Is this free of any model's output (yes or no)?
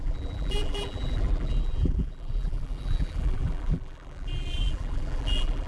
no